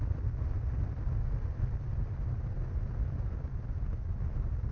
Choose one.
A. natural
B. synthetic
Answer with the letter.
A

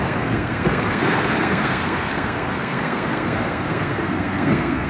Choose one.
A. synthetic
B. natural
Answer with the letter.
A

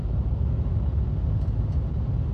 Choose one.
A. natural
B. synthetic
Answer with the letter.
A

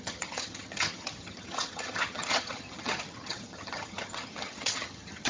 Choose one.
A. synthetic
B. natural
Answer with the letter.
A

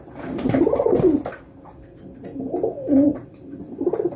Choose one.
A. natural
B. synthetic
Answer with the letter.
A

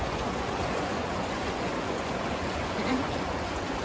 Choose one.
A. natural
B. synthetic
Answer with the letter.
B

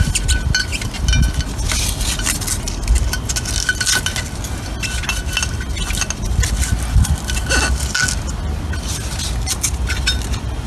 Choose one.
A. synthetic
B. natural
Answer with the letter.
B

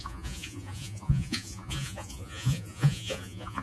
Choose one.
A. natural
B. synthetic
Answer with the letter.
B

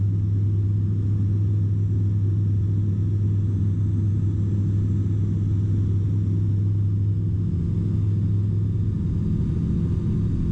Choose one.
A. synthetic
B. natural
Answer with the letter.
B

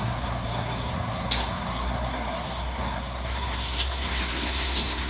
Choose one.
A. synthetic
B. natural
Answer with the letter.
A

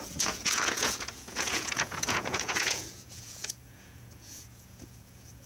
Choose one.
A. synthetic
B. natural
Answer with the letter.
A